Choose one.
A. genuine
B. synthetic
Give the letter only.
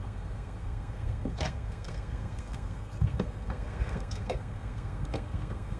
B